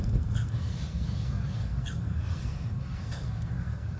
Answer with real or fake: fake